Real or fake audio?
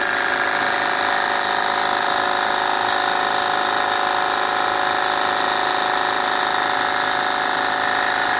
real